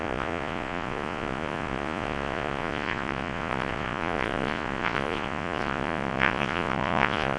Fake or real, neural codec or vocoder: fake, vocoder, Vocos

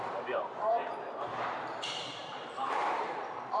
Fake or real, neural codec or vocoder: fake, vocoder, BigVGAN v2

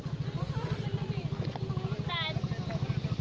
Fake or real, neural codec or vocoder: real